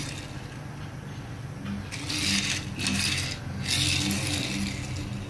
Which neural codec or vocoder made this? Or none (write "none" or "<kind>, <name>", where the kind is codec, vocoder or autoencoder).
none